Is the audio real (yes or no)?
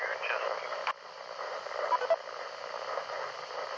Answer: yes